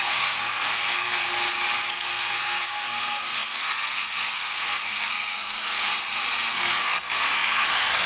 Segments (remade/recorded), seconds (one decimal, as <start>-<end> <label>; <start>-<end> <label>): 0.0-1.2 remade; 1.2-1.9 recorded; 1.9-5.9 remade; 5.9-6.5 recorded; 6.5-8.1 remade